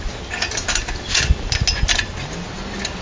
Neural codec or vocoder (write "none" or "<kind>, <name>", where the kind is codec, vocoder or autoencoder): none